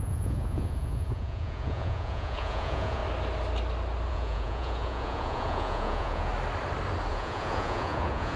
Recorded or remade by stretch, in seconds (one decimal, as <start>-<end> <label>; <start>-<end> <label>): 0.0-3.0 remade; 3.0-4.1 recorded; 4.1-6.3 remade; 6.3-7.1 recorded; 7.1-8.4 remade